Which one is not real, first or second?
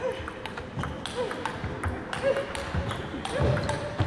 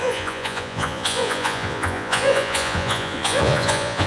second